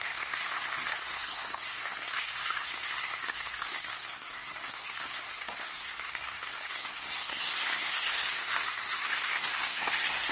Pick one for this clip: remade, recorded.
remade